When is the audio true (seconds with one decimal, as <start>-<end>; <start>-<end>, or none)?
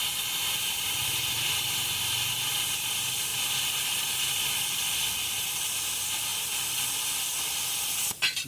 0.0-8.5